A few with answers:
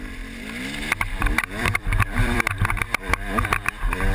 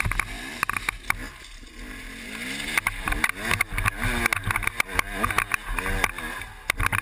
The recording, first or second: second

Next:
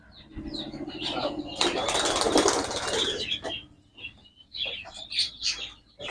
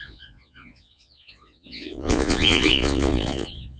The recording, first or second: first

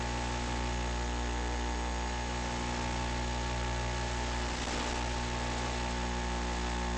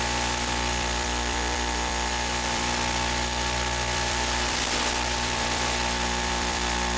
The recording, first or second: first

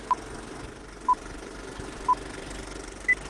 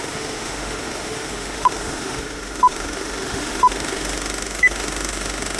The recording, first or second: first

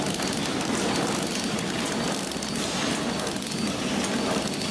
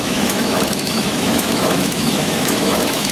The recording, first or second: first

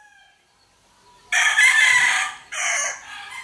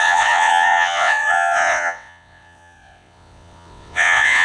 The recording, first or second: first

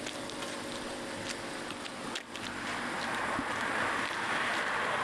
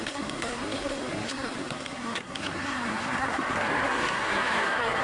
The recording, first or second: first